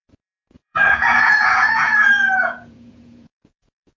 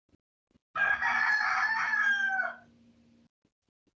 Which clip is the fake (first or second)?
first